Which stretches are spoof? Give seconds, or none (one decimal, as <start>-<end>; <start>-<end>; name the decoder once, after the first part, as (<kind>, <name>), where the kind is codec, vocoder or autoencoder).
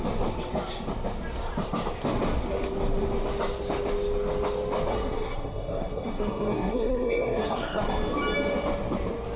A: 4.9-7.8 (codec, SNAC)